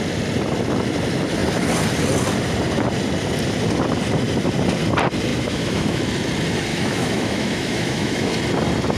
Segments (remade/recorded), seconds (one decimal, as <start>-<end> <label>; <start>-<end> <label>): 0.0-5.3 recorded; 5.3-6.0 remade; 6.0-6.7 recorded; 6.7-8.3 remade; 8.3-9.0 recorded